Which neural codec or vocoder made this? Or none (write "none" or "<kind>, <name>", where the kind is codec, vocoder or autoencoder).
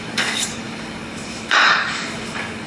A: codec, DAC